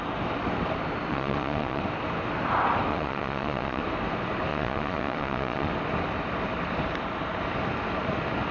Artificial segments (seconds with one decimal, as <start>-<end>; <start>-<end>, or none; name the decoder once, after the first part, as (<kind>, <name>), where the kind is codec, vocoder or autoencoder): 1.1-1.8 (vocoder, Vocos); 2.9-3.8; 4.5-5.7